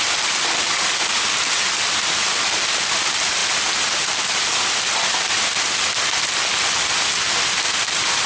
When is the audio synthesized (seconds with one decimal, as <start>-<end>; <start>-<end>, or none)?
none